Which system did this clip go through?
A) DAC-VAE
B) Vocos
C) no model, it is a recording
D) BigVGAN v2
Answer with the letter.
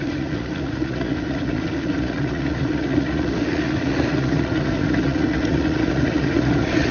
B